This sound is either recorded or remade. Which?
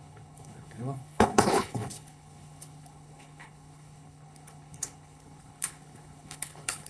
remade